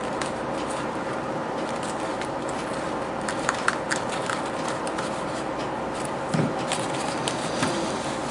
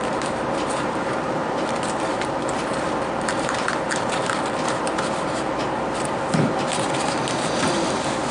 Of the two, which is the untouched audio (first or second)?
first